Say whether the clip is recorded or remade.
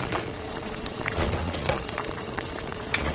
remade